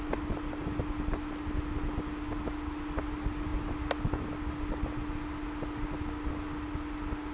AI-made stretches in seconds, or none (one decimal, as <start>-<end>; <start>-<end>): none